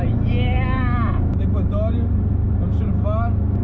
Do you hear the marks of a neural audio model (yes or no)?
no